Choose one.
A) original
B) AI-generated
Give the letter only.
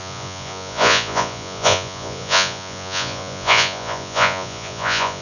B